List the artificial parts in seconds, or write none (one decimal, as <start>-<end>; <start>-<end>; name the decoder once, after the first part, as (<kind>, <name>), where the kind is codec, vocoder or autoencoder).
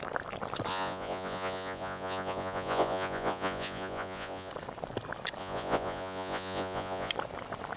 0.7-4.5 (vocoder, Vocos); 5.4-7.1